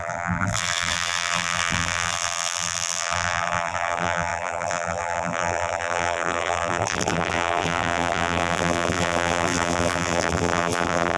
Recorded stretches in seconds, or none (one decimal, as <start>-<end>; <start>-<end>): none